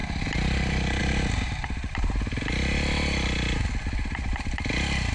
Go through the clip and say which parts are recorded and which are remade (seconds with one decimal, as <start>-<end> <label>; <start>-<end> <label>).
0.0-5.1 recorded